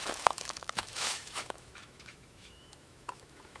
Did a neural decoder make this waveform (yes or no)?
yes